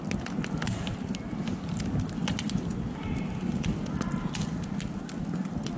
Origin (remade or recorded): recorded